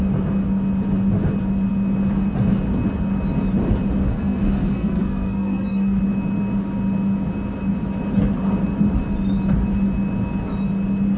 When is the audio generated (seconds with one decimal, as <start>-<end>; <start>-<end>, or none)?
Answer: 4.1-6.0

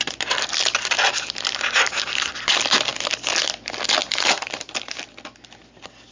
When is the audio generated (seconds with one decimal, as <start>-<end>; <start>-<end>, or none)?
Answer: 4.0-5.1

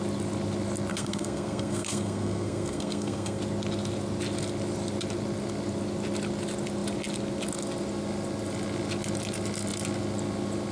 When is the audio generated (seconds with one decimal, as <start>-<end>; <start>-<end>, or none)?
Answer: 0.9-3.4

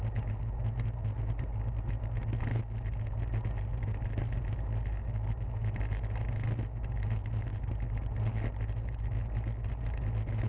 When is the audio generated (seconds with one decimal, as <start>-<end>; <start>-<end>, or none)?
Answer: none

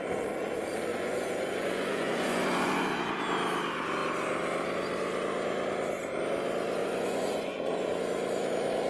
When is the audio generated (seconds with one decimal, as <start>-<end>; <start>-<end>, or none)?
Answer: 0.9-2.9; 6.8-8.0

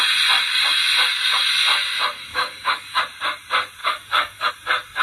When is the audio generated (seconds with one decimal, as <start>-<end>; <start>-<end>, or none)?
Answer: 2.3-3.0; 3.8-4.5

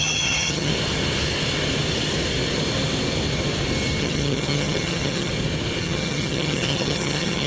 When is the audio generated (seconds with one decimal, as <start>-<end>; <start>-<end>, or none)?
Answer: 0.0-0.7; 4.0-5.3; 5.8-7.5

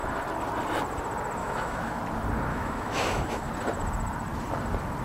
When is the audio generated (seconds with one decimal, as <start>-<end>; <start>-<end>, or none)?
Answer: 1.4-2.0; 2.5-3.5